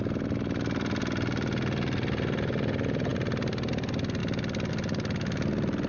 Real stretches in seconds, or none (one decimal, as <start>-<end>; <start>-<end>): 0.0-5.9